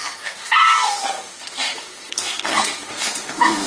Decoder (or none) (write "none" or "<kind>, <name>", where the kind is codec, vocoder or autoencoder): codec, SNAC